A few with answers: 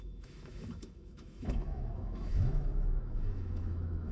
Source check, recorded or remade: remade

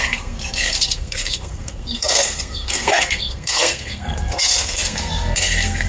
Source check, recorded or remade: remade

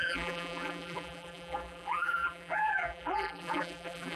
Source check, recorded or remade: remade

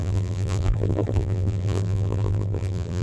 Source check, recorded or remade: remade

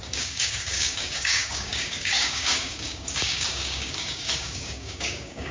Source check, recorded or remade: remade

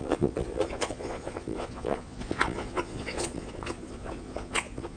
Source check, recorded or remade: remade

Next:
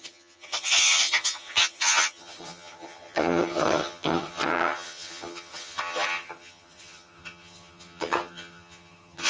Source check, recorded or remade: remade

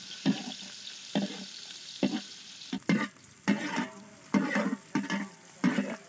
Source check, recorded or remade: recorded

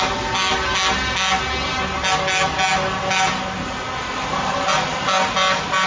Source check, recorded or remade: recorded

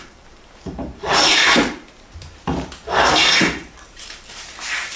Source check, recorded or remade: remade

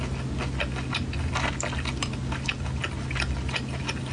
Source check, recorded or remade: recorded